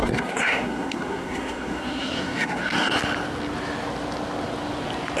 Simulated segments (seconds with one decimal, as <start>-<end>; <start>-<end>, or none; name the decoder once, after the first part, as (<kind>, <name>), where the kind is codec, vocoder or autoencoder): 0.0-2.9 (codec, SNAC)

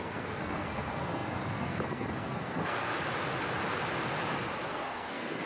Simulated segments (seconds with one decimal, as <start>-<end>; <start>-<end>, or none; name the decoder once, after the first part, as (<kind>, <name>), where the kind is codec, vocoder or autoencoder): 0.0-2.9 (codec, SNAC); 4.7-5.5

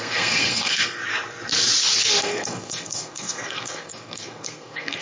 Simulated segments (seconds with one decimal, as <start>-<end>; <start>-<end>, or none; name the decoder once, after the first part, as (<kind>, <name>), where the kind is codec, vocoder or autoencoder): 0.0-1.0 (codec, SNAC); 2.2-5.0

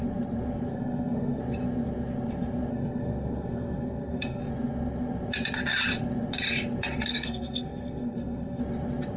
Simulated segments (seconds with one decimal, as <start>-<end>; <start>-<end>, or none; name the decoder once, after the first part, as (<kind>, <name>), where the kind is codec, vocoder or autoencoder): 0.7-1.4 (codec, SNAC); 2.7-4.4; 7.1-8.6